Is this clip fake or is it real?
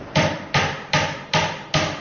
fake